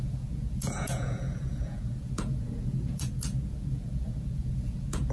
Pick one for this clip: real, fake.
fake